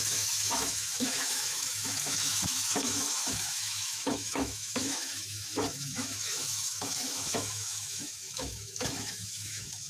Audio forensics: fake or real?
fake